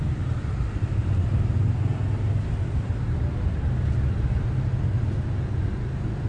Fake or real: real